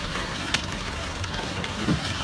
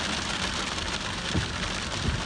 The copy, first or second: first